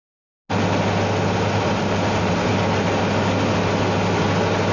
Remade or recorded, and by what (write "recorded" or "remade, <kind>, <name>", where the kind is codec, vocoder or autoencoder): recorded